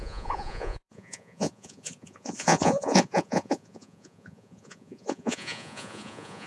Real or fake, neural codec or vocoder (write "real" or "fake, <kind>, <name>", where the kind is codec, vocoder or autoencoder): fake, vocoder, Vocos